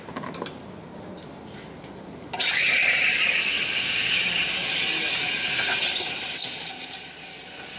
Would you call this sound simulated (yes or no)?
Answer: no